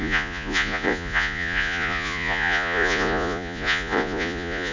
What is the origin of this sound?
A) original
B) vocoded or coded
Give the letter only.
B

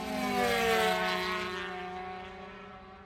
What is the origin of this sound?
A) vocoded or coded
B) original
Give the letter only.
B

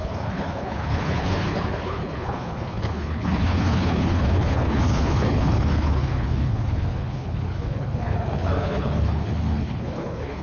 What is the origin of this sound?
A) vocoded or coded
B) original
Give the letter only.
A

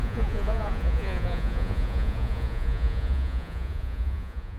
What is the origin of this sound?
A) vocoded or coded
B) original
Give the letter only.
A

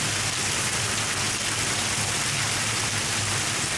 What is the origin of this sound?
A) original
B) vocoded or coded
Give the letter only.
A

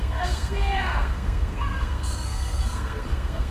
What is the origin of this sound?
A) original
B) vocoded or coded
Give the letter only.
B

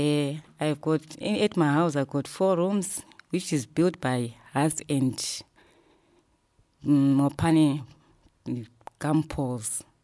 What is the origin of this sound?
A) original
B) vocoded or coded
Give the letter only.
A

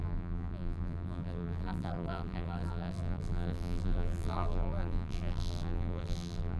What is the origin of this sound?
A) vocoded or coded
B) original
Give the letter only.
A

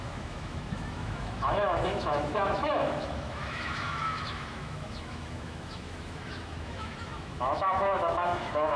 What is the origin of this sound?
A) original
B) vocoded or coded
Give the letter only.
B